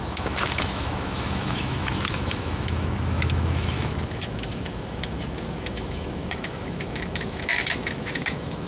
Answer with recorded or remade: remade